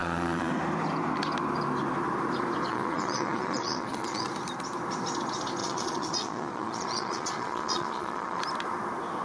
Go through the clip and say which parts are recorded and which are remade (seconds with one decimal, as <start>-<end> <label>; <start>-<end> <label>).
0.0-0.5 remade; 0.5-2.7 recorded; 2.7-4.3 remade; 4.3-5.6 recorded; 5.6-8.4 remade; 8.4-9.2 recorded